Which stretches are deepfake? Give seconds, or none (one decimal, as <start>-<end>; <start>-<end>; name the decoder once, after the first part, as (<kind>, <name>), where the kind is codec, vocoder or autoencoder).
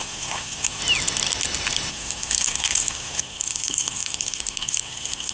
0.0-0.8 (codec, SNAC); 1.9-5.3